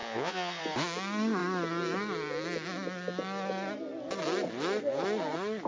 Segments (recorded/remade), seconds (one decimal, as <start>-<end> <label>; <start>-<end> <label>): 0.0-0.6 remade; 0.6-5.7 recorded